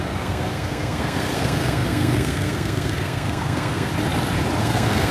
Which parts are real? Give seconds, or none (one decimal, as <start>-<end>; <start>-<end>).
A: 3.9-4.6